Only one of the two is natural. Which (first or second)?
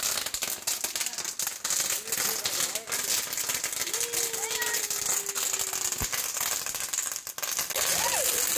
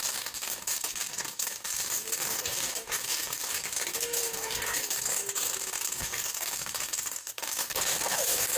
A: first